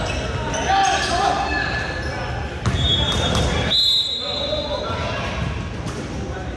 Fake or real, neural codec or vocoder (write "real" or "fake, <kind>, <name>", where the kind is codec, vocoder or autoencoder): real